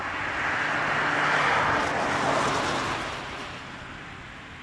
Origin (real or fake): real